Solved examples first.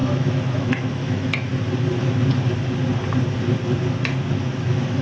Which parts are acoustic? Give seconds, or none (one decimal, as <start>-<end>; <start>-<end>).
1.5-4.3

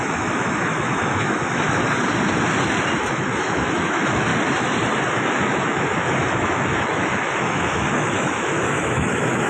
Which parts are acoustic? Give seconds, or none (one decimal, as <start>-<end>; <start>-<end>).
1.8-2.9; 4.3-5.1

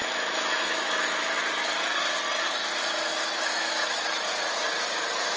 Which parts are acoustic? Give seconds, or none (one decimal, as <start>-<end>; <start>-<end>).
1.4-2.6; 4.2-5.4

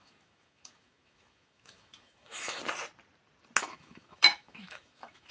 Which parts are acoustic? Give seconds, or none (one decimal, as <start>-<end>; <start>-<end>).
2.6-3.6